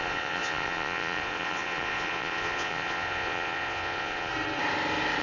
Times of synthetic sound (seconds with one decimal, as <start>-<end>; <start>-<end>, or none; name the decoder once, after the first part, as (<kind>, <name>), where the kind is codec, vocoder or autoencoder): 0.0-4.3 (vocoder, Vocos)